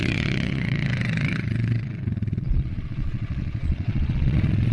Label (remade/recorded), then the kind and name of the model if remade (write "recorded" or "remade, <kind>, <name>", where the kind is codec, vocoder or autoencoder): remade, vocoder, Vocos